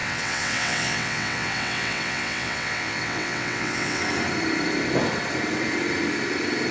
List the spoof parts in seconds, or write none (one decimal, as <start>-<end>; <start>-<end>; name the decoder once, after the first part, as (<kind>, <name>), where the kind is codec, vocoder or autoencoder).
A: 0.0-4.0 (vocoder, WaveNeXt)